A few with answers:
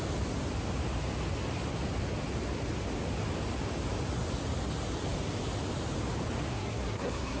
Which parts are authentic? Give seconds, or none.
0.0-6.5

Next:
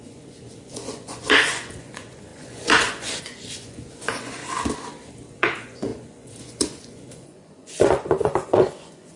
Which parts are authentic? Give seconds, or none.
4.4-5.3

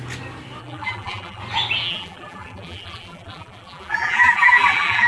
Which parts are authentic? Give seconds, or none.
0.0-0.6; 1.4-1.8